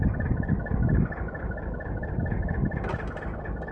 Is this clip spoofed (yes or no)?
no